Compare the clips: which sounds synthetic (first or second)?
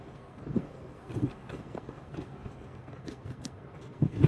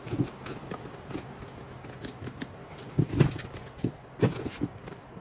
first